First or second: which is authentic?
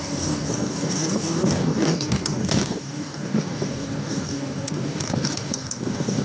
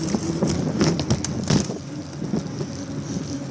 second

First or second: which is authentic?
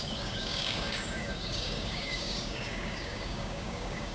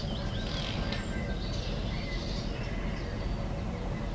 second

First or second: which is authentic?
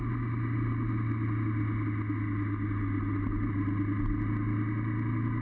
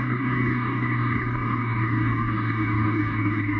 first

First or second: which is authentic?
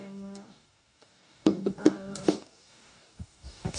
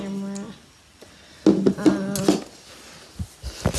second